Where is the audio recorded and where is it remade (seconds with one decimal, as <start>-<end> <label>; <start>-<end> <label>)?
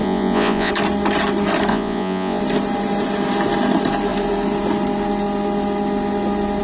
0.0-0.7 remade; 0.7-1.7 recorded; 1.7-2.4 remade; 2.4-6.6 recorded